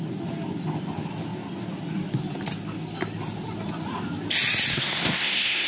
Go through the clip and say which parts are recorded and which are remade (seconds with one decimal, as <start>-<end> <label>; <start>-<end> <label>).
0.0-4.7 recorded; 4.7-5.7 remade

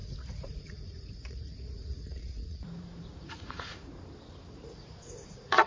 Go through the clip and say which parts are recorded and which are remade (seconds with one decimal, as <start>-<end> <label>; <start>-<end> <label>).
0.0-3.9 remade; 3.9-4.5 recorded; 4.5-5.7 remade